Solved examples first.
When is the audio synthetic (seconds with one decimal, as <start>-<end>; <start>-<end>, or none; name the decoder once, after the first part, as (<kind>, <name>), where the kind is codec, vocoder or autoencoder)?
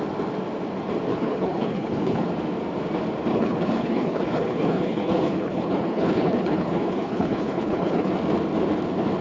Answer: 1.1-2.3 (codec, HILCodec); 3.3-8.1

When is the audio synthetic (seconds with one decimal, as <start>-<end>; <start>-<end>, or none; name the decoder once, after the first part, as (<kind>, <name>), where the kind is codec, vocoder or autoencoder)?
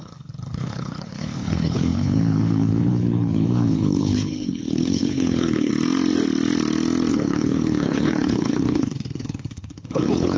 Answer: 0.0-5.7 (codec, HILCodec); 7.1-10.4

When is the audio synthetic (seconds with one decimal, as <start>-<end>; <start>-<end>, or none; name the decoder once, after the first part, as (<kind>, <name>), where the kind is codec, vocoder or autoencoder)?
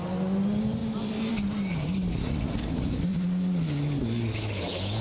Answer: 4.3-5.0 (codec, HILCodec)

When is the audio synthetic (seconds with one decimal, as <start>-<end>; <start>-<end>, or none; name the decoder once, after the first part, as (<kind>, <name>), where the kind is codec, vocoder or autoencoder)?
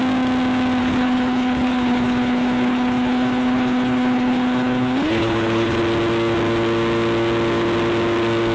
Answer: 0.8-5.8 (codec, HILCodec)